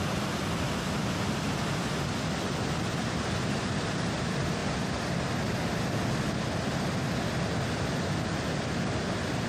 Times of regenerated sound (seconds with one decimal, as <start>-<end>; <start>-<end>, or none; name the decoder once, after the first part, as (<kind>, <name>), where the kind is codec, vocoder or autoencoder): none